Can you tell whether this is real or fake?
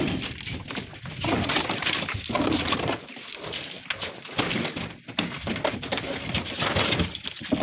real